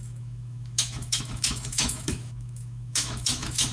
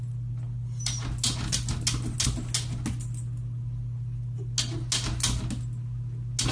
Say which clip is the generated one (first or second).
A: first